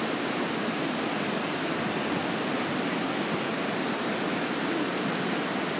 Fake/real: real